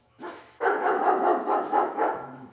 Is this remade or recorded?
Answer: remade